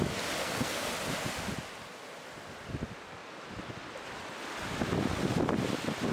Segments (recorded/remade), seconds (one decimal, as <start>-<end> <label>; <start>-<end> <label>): 0.0-0.4 recorded; 0.4-0.9 remade; 0.9-6.1 recorded